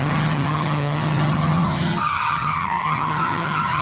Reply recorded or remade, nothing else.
remade